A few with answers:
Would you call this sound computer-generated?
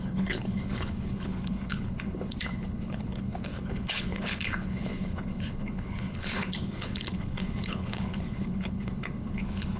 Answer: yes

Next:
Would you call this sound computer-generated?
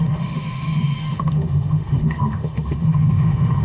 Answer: yes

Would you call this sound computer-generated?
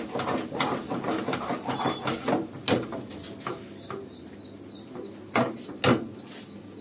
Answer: no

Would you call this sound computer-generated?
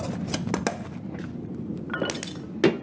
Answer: no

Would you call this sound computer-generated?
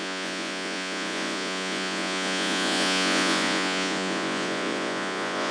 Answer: yes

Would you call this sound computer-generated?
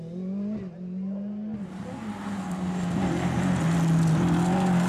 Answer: no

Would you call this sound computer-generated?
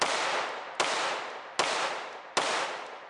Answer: no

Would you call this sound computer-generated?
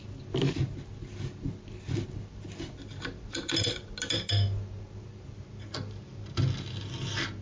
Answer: no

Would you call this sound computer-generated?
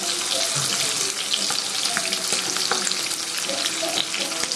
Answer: no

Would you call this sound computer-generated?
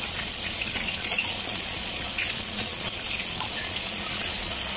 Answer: yes